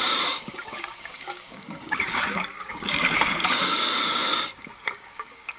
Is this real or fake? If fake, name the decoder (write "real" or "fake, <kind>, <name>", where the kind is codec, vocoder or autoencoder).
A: fake, codec, DAC